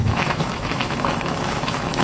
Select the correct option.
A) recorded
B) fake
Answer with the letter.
B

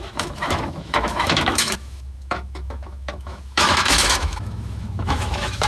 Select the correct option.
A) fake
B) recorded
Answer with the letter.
A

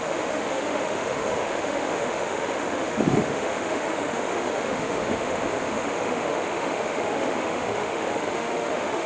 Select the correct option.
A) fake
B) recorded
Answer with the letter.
A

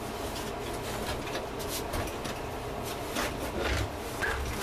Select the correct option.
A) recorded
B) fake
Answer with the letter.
A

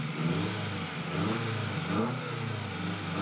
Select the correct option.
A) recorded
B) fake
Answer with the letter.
A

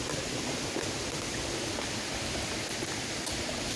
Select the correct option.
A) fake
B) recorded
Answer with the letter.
B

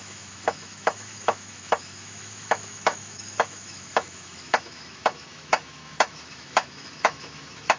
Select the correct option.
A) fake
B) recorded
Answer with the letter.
A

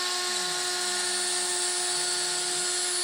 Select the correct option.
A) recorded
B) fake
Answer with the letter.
A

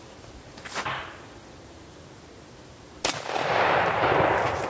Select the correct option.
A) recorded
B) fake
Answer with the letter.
A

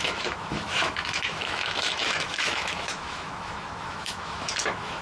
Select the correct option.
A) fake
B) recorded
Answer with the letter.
A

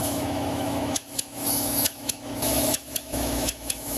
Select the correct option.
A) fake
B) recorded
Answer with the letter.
A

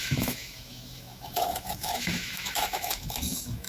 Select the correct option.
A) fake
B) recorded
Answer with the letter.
A